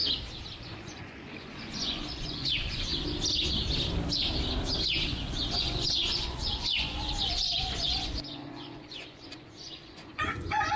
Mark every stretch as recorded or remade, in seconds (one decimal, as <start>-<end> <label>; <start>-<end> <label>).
0.0-0.6 recorded; 0.6-2.9 remade; 2.9-4.9 recorded; 4.9-10.8 remade